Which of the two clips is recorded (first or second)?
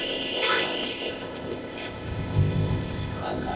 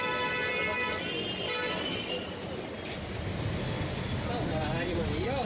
second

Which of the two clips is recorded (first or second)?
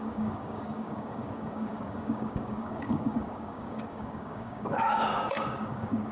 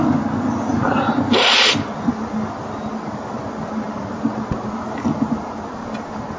second